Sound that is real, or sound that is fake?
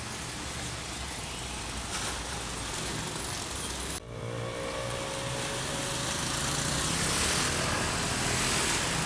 real